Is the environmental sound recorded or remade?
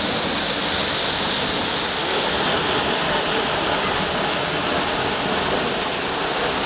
recorded